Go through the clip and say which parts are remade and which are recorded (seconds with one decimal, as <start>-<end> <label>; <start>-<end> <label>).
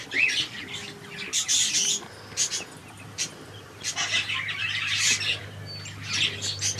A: 0.0-2.8 recorded; 2.8-3.9 remade; 3.9-6.8 recorded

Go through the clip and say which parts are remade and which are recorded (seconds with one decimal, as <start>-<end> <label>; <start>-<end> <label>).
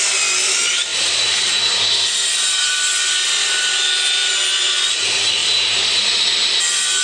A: 0.0-0.9 recorded; 0.9-2.7 remade; 2.7-5.4 recorded; 5.4-6.1 remade; 6.1-7.0 recorded